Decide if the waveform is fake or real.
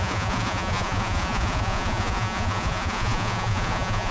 fake